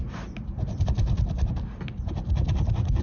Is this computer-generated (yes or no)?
no